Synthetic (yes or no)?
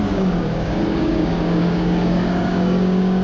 yes